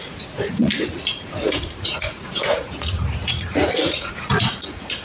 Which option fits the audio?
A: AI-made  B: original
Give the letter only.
A